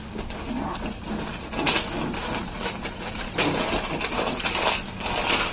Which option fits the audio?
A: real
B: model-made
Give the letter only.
A